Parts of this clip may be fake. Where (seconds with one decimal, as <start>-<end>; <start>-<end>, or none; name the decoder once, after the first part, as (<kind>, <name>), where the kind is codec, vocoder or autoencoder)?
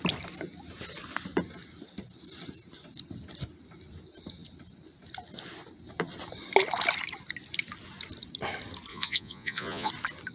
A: 8.9-9.9 (vocoder, Vocos)